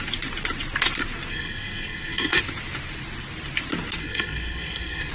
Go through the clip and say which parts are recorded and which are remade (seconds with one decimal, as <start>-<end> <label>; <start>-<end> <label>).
0.0-1.3 recorded; 1.3-2.4 remade; 2.4-4.0 recorded; 4.0-5.1 remade